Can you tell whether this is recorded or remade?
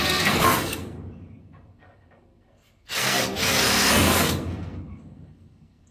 remade